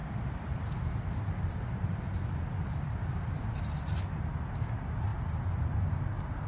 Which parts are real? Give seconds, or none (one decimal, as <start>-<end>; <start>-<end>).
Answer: 0.0-6.5